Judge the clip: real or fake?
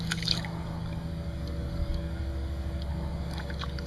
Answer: fake